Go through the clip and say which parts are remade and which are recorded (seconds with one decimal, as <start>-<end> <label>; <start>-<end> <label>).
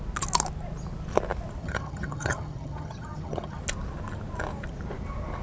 0.0-1.6 recorded; 1.6-3.6 remade; 3.6-5.4 recorded